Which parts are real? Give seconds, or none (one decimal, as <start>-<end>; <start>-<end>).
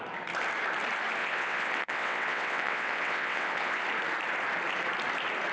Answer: 0.0-1.2; 3.8-5.5